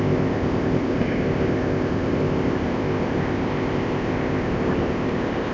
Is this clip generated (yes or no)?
yes